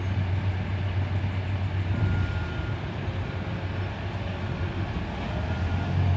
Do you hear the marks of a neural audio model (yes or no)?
no